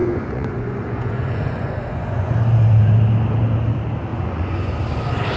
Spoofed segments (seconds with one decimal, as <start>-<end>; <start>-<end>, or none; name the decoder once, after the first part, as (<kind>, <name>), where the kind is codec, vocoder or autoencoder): 0.0-2.3 (vocoder, Vocos); 4.1-4.7